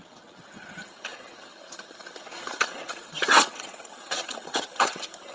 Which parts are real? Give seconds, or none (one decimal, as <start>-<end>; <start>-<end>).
none